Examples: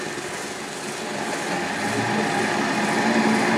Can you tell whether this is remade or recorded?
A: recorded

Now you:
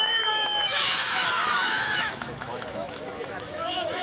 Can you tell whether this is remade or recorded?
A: remade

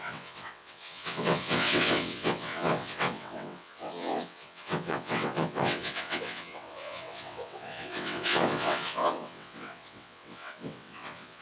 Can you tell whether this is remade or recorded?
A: remade